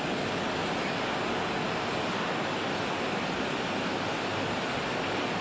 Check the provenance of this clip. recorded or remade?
recorded